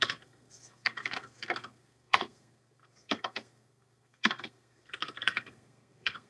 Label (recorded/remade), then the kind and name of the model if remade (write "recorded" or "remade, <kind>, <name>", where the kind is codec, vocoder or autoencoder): remade, codec, SNAC